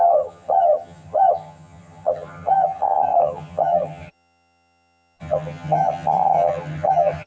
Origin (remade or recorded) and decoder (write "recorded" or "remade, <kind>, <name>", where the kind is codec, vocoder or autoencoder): remade, vocoder, HiFi-GAN